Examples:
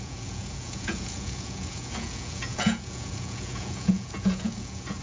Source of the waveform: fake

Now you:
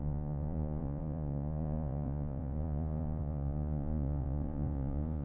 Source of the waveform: fake